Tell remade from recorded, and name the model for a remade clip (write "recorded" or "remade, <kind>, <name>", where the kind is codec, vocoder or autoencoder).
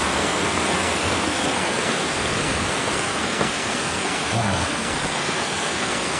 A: remade, codec, SNAC